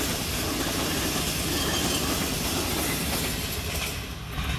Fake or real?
real